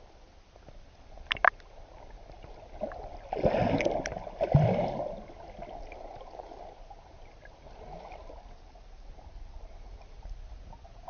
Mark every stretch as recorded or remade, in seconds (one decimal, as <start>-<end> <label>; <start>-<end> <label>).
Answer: 0.0-8.2 recorded; 8.2-9.9 remade; 9.9-11.1 recorded